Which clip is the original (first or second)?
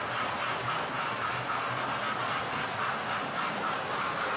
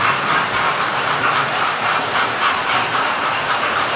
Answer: first